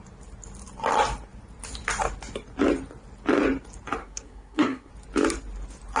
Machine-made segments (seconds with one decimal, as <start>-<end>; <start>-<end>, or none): 4.0-4.9